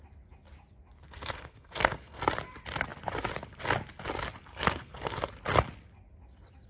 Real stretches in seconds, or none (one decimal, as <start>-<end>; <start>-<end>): 0.0-1.0; 2.2-4.5; 5.3-6.7